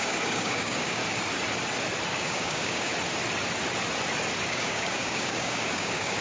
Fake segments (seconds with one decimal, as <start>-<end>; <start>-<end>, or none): 0.0-1.0; 2.1-2.9; 4.5-6.2